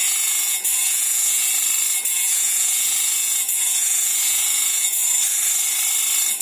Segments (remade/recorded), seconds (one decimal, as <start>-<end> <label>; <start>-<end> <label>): 0.0-1.5 remade; 1.5-2.1 recorded; 2.1-5.0 remade; 5.0-6.4 recorded